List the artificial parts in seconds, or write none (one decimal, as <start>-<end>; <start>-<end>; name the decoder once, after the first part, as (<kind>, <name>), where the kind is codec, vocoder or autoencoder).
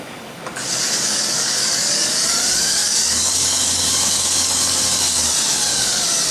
0.0-6.3 (codec, DAC)